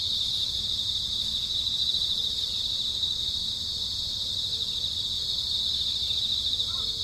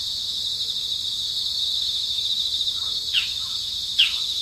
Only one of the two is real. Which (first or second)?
first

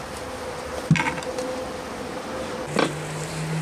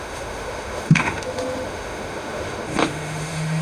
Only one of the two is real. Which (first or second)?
first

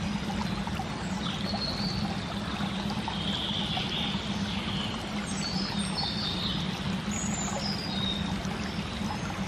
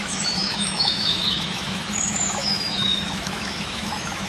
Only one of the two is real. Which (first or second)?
first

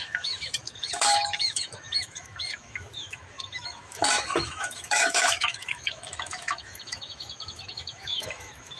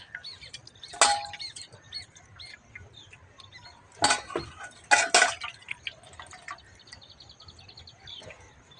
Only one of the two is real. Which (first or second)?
second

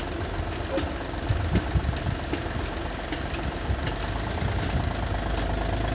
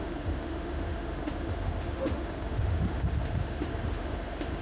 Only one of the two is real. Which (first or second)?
first